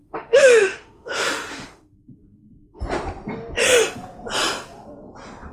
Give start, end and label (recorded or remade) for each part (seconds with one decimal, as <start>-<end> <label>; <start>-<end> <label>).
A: 0.0-2.8 remade; 2.8-5.5 recorded